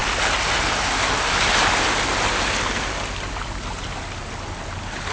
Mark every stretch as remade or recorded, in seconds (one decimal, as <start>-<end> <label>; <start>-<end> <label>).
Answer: 0.0-2.5 recorded; 2.5-2.9 remade; 2.9-5.1 recorded